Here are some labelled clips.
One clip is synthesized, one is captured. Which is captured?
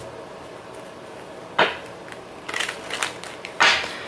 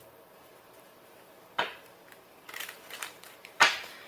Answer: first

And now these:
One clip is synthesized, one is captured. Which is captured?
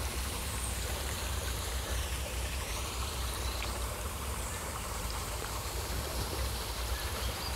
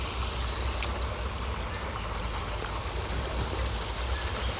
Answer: second